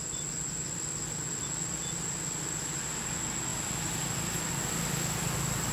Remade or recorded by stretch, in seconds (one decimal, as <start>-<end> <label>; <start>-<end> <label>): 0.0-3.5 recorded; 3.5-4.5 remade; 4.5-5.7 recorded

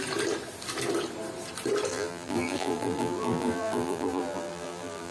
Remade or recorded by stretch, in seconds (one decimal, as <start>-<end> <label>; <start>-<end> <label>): 0.0-1.9 recorded; 1.9-5.1 remade

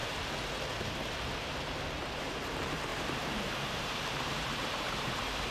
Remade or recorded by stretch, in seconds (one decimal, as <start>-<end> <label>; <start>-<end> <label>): 0.0-2.1 recorded; 2.1-5.5 remade